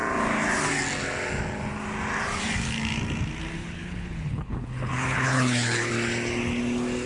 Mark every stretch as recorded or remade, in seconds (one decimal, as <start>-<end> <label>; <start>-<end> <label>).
0.0-3.6 recorded; 3.6-5.9 remade; 5.9-7.1 recorded